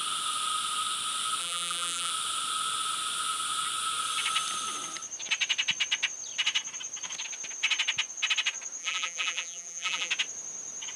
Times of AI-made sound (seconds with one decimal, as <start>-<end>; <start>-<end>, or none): 1.4-2.1; 8.8-10.1